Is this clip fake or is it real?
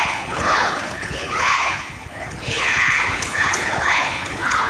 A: fake